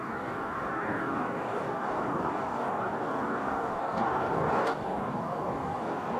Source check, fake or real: fake